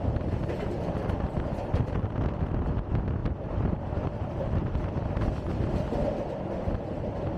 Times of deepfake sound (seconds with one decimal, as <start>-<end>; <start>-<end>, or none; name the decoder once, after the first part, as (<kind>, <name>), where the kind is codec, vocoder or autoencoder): 3.2-4.2 (vocoder, BigVGAN v2)